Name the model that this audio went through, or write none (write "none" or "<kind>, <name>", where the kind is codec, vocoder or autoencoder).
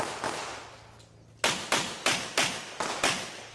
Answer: none